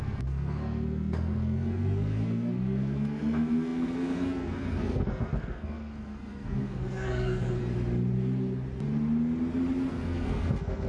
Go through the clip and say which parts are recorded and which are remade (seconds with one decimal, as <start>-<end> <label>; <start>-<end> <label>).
0.0-7.6 remade; 7.6-9.9 recorded; 9.9-10.9 remade